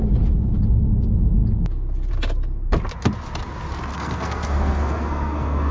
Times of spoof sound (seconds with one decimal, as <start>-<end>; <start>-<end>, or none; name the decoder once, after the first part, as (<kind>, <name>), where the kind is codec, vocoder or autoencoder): 3.9-5.7 (codec, SNAC)